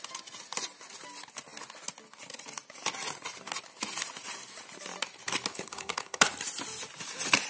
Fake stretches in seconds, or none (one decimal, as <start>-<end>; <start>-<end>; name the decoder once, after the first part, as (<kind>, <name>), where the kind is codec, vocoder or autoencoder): 5.5-6.2 (codec, HILCodec)